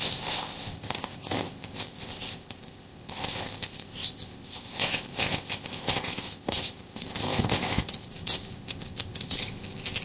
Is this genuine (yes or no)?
no